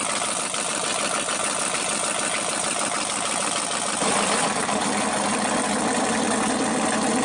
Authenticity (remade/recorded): recorded